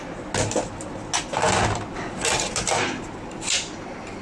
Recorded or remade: recorded